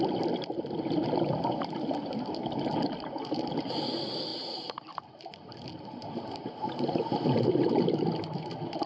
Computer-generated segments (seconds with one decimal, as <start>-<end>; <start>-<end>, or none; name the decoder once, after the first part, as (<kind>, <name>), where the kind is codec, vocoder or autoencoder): 4.3-8.2 (vocoder, BigVGAN v2)